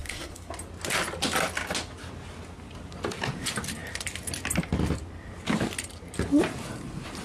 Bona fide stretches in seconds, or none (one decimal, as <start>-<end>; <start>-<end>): 0.5-7.2

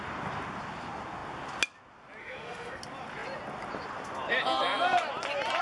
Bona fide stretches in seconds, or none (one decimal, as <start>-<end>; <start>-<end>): 0.0-2.2; 2.8-5.6